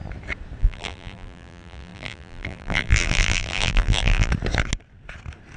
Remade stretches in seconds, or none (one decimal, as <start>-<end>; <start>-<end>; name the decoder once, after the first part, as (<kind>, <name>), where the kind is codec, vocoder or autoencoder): 0.6-4.3 (vocoder, BigVGAN v2)